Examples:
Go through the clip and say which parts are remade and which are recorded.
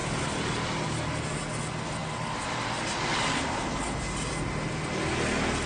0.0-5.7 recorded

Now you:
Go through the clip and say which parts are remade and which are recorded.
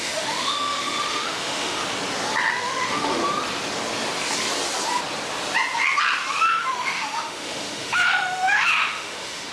0.0-1.8 remade; 1.8-2.5 recorded; 2.5-3.2 remade; 3.2-6.3 recorded; 6.3-9.5 remade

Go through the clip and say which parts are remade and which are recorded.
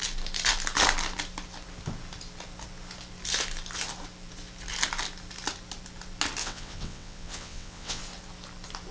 0.0-6.4 recorded; 6.4-8.0 remade; 8.0-8.9 recorded